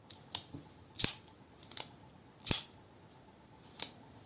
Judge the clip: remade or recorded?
recorded